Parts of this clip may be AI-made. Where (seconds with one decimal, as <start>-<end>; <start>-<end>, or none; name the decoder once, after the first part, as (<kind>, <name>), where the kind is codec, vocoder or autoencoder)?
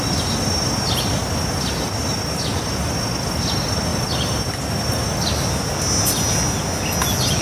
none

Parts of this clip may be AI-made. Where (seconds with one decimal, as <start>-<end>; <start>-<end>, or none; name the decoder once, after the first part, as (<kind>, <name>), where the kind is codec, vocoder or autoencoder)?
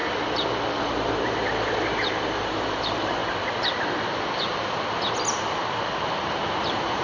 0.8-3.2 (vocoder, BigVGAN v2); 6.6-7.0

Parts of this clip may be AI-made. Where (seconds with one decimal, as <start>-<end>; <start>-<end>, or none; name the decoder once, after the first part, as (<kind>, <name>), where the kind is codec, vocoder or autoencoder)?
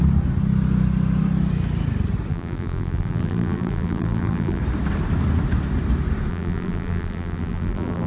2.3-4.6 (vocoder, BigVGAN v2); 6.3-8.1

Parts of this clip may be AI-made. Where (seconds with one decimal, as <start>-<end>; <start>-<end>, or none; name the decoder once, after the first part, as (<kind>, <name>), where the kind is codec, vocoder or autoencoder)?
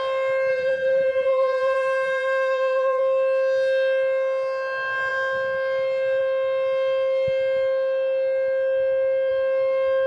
0.5-3.0 (vocoder, BigVGAN v2)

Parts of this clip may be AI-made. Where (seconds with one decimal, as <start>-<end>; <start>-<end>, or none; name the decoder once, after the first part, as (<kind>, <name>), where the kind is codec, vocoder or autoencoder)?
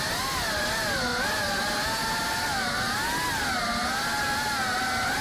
none